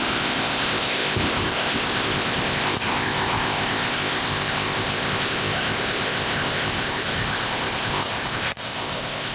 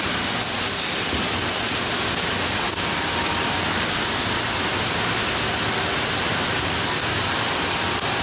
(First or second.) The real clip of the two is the second